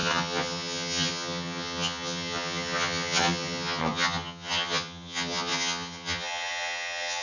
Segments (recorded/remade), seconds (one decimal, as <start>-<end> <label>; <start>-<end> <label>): 0.0-7.2 remade